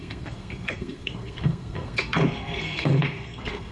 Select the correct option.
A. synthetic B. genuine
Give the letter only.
A